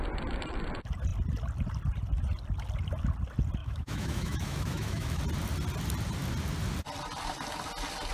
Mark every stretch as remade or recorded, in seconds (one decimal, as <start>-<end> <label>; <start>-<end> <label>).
0.0-3.6 recorded; 3.6-5.2 remade; 5.2-8.1 recorded